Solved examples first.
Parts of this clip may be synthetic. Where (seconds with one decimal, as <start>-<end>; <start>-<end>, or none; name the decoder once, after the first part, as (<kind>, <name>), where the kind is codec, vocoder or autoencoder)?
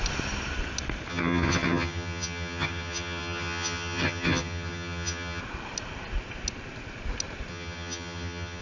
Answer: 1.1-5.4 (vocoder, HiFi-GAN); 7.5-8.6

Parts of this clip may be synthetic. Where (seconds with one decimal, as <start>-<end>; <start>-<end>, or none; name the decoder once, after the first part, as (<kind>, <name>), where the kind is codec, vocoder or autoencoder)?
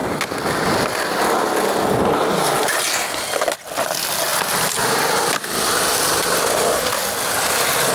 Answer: none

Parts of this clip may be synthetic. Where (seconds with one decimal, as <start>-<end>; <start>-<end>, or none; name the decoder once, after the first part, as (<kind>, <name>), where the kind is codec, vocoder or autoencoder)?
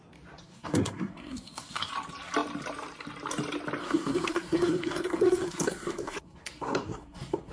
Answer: 0.4-1.9 (codec, SNAC); 3.8-7.5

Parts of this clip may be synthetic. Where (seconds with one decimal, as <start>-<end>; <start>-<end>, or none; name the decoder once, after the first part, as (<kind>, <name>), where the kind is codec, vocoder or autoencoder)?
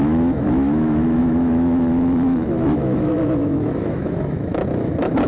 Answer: 0.0-5.3 (autoencoder, DAC-VAE)